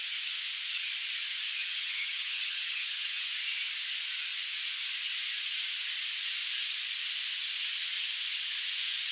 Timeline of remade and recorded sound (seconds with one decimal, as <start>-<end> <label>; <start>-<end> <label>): 0.0-1.6 recorded; 1.6-3.3 remade; 3.3-9.1 recorded